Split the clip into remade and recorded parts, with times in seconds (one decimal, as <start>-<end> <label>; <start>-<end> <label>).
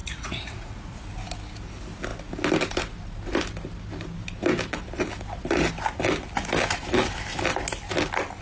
0.0-1.0 remade; 1.0-8.4 recorded